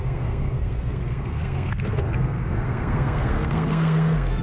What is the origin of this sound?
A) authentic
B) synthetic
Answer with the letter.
B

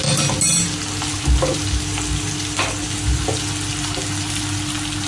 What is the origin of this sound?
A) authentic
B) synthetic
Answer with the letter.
A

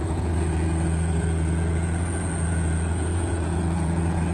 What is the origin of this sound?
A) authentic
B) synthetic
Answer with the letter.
B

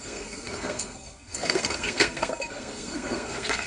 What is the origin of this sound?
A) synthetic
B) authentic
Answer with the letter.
A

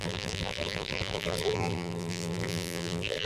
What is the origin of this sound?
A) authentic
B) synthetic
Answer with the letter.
B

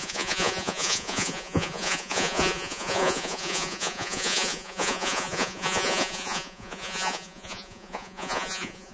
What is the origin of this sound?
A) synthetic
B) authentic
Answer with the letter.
A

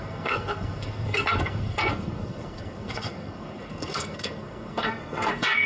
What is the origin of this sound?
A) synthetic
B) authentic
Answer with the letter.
A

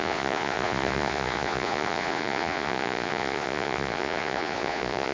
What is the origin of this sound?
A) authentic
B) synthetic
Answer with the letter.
B